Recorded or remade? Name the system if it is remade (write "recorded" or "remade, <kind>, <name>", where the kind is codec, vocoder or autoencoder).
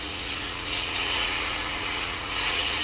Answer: remade, vocoder, Vocos